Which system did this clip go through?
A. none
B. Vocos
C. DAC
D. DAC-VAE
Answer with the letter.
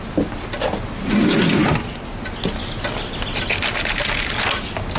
A